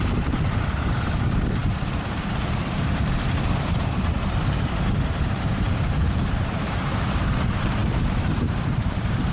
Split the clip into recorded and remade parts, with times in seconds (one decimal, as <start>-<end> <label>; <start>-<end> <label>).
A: 0.0-9.3 remade